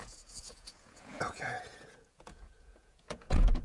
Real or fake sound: fake